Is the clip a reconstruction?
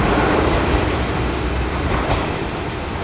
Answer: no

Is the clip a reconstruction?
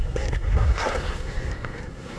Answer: yes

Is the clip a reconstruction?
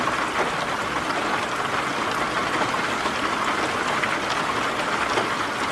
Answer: no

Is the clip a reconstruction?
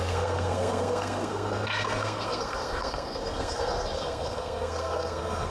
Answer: yes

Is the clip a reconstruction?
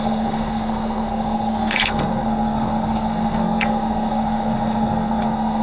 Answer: yes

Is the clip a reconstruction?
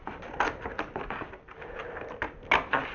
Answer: no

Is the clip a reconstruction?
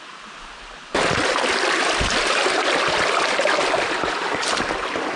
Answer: no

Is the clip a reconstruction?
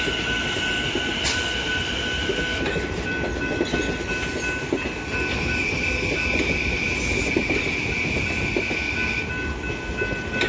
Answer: no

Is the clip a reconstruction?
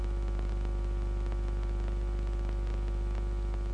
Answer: no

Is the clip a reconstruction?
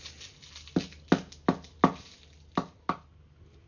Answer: no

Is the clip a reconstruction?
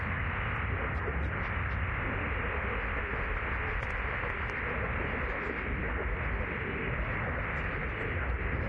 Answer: no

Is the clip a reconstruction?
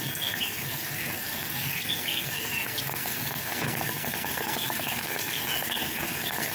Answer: yes